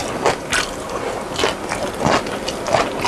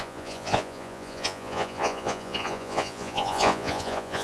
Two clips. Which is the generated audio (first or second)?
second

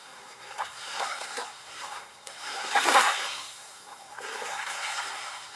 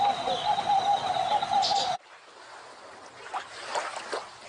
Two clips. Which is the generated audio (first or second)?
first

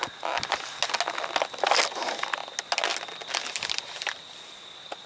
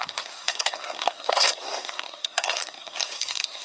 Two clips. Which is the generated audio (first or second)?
second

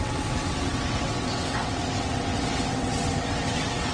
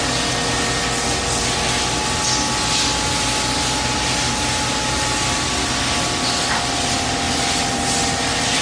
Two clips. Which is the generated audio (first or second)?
first